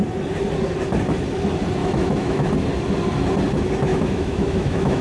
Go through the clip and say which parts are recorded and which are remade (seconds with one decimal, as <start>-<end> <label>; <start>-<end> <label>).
0.0-1.8 recorded; 1.8-2.5 remade; 2.5-3.9 recorded; 3.9-5.0 remade